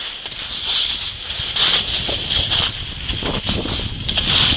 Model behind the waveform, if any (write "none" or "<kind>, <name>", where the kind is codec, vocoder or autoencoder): none